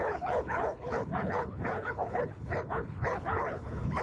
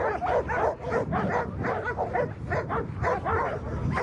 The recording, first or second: second